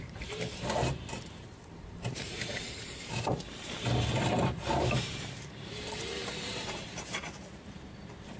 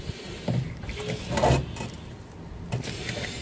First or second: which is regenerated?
first